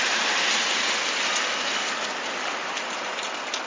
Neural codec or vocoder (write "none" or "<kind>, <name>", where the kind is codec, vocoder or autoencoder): none